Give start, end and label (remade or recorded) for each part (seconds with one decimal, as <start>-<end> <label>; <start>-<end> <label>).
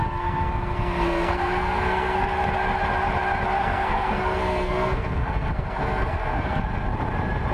0.0-2.3 remade; 2.3-3.6 recorded; 3.6-6.6 remade; 6.6-7.5 recorded